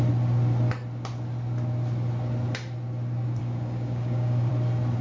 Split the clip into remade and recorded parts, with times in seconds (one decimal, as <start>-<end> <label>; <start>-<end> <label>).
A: 0.0-3.4 recorded; 3.4-4.5 remade; 4.5-5.0 recorded